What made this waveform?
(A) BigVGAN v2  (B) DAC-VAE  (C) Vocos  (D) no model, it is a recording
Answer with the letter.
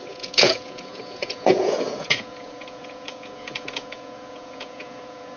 C